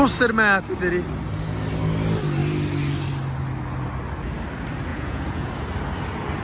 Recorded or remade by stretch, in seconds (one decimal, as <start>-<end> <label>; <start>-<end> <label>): 0.0-4.9 recorded; 4.9-5.5 remade; 5.5-6.4 recorded